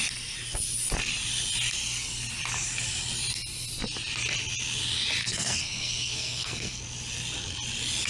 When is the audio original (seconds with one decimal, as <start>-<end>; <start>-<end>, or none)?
0.0-5.2; 6.8-8.1